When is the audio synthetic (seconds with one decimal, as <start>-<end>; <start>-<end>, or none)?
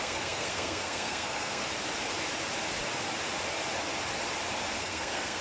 0.0-1.6; 4.8-5.4